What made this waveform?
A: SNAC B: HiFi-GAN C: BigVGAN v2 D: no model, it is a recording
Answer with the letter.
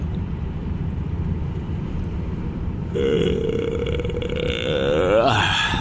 D